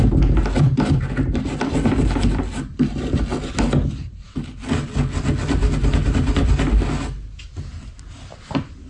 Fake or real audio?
real